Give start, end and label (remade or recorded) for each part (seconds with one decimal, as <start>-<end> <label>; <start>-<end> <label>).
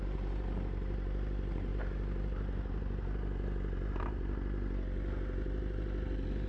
0.0-6.5 recorded